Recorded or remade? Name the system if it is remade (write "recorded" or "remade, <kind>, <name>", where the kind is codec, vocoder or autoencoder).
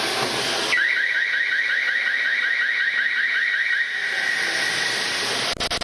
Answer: recorded